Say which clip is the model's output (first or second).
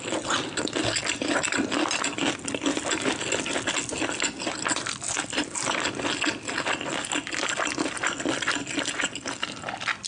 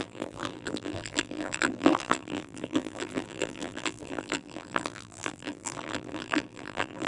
second